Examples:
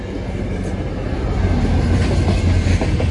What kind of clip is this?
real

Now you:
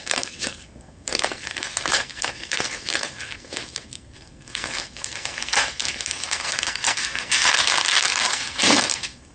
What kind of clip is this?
fake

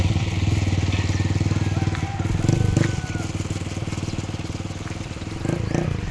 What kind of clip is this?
real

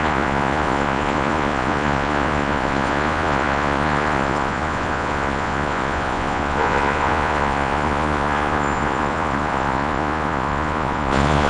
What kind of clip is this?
fake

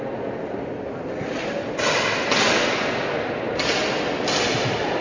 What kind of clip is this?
real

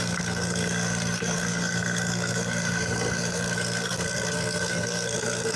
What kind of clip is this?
fake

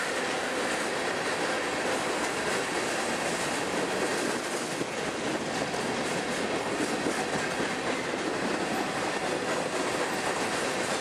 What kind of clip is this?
real